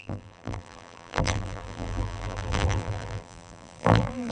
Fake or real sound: fake